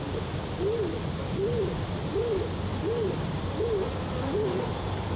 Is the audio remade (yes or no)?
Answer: no